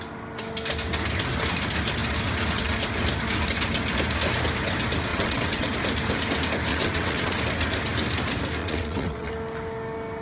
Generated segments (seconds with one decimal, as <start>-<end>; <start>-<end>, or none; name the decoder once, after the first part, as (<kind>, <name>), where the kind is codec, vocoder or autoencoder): 5.1-5.7 (vocoder, WaveNeXt); 6.7-7.4; 8.6-9.3